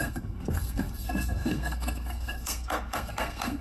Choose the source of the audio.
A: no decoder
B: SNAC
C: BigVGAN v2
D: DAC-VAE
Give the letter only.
B